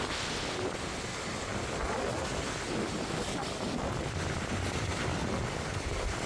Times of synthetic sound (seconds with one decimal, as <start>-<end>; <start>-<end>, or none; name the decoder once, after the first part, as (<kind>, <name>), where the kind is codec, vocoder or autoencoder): none